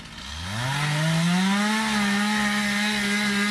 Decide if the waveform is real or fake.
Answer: real